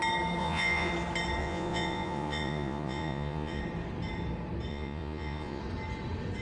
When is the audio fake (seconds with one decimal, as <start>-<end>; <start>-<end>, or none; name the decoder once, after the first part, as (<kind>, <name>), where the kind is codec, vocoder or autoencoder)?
0.4-0.9 (vocoder, Vocos); 1.4-3.6; 4.7-5.6